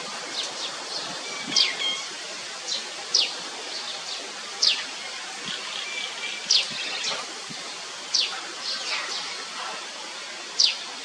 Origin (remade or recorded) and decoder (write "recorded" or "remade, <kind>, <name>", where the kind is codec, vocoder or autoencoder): recorded